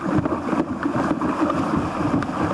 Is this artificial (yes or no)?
no